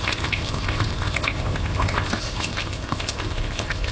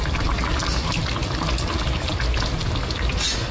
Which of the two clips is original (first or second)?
second